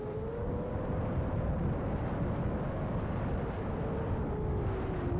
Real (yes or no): yes